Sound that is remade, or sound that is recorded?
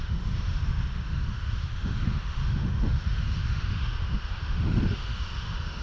remade